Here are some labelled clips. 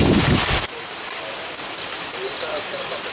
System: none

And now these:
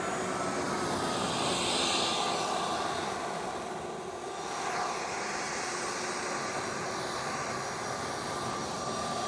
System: none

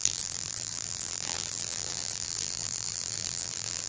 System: vocoder, BigVGAN v2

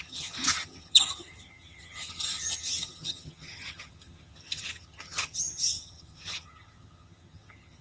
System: vocoder, HiFi-GAN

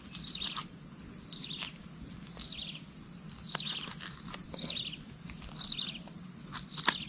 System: none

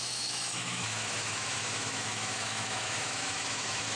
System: autoencoder, DAC-VAE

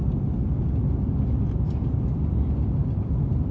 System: none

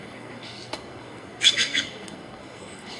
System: codec, SNAC